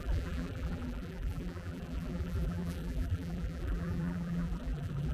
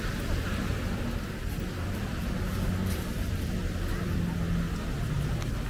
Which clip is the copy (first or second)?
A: first